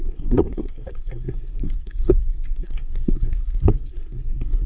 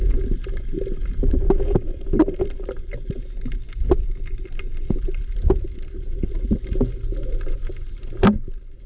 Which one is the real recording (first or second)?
second